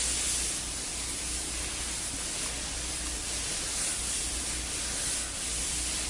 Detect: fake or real real